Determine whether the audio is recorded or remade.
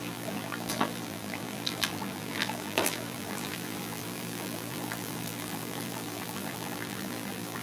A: remade